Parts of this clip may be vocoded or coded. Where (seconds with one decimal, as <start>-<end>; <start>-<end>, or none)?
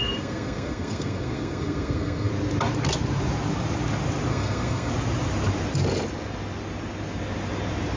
0.0-2.3; 4.3-4.9